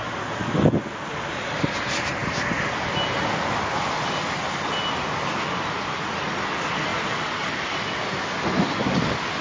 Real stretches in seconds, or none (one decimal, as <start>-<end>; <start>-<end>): 0.0-9.4